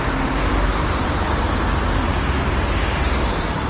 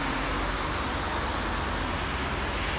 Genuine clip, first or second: second